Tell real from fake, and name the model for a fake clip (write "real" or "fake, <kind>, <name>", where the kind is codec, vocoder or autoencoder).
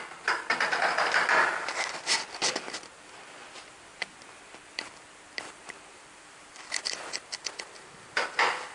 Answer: fake, vocoder, BigVGAN v2